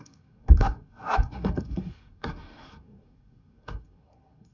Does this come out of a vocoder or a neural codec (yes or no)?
yes